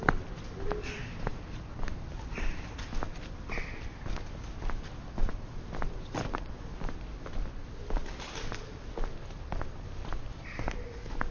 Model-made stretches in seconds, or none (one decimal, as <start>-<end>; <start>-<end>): none